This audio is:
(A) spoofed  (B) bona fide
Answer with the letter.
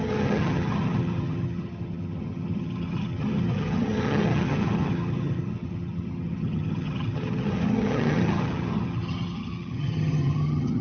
A